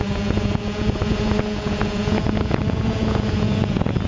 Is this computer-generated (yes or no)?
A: yes